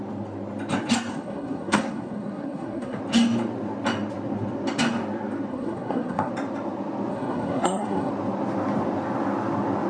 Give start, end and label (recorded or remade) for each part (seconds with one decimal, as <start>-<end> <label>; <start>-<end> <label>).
0.0-1.1 recorded; 1.1-3.0 remade; 3.0-5.5 recorded; 5.5-6.3 remade; 6.3-7.1 recorded; 7.1-8.1 remade; 8.1-9.9 recorded